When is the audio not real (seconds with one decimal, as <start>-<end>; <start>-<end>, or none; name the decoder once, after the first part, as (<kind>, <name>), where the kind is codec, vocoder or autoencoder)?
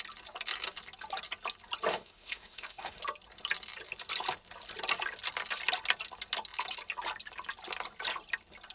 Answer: 1.9-3.0 (autoencoder, DAC-VAE)